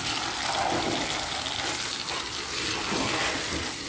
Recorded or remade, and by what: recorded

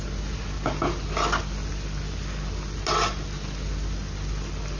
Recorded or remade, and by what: recorded